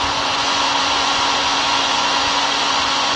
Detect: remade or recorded remade